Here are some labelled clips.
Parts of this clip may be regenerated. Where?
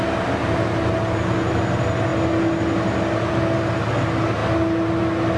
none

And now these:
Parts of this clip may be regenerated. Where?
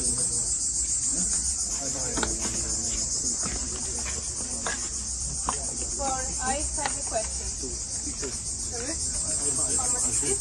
1.1-1.7 (vocoder, BigVGAN v2); 5.4-6.1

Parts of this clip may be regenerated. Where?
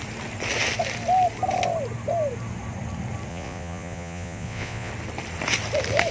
3.3-4.9 (vocoder, Vocos)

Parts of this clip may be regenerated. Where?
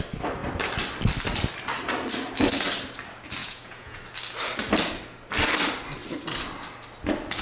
3.4-4.0 (vocoder, Vocos)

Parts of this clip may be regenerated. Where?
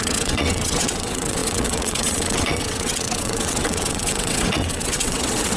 0.0-5.6 (vocoder, WaveNeXt)